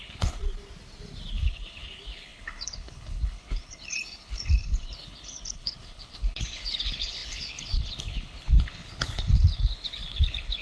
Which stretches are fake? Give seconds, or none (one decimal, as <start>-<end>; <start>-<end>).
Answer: 0.0-0.4; 1.3-10.6

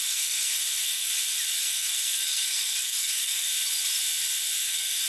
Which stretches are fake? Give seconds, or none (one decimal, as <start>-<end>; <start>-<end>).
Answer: 0.0-1.1; 1.6-3.5; 4.6-5.1

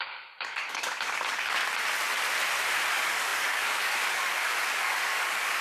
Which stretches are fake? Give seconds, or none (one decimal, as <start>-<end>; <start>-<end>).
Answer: 0.0-1.6; 2.9-5.6

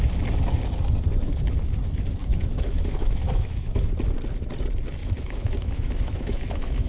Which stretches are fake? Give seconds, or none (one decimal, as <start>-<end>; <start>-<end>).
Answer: 2.2-3.9; 5.0-6.9

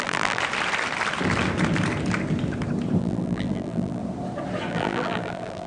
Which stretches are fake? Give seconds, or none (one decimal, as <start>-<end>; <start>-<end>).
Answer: 0.0-0.4; 3.0-4.0; 4.7-5.7

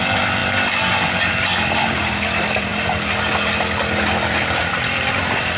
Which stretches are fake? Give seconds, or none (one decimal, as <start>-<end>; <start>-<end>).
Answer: 0.0-2.7; 4.7-5.6

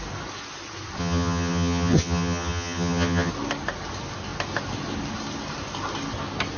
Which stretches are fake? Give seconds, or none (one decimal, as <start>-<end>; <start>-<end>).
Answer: 1.0-3.3